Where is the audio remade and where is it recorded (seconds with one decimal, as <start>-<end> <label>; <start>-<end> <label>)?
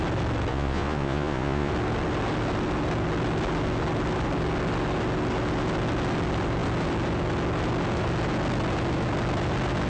0.0-0.5 recorded; 0.5-1.7 remade; 1.7-9.9 recorded